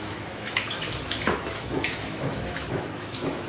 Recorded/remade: remade